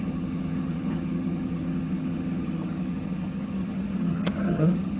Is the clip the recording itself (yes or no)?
no